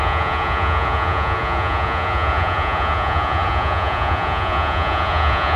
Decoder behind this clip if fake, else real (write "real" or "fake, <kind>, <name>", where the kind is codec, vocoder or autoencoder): fake, vocoder, Vocos